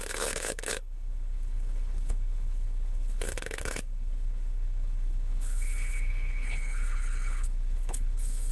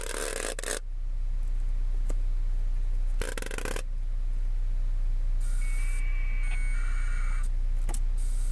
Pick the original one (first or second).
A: second